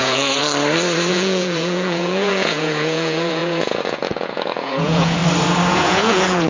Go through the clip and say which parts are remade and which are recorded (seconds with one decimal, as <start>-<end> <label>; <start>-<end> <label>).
0.0-0.4 remade; 0.4-1.1 recorded; 1.1-5.2 remade; 5.2-5.7 recorded; 5.7-6.5 remade